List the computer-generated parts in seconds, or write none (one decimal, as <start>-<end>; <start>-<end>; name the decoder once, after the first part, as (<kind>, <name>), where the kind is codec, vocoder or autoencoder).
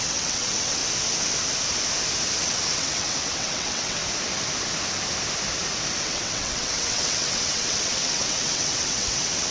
0.0-0.8 (vocoder, WaveNeXt); 2.4-4.0; 6.0-9.5